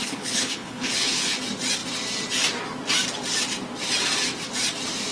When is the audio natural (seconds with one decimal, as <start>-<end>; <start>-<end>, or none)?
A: 1.4-5.1